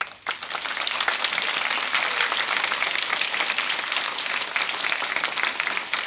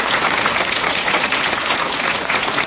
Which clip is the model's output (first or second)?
second